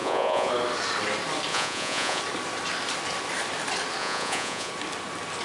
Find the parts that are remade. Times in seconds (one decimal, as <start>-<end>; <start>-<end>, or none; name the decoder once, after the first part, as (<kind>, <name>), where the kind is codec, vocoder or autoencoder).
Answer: 0.0-0.5 (vocoder, Vocos); 1.5-2.2; 4.0-4.7